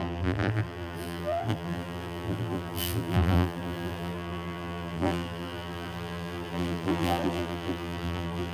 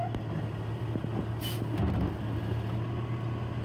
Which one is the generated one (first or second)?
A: first